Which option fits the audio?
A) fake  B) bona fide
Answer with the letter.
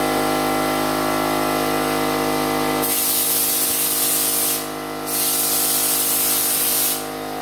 B